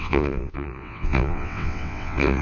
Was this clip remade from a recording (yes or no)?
yes